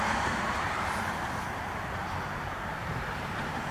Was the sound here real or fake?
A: fake